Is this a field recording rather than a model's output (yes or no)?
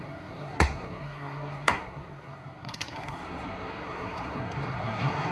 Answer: no